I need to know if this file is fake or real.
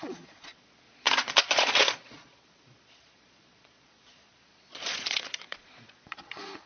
fake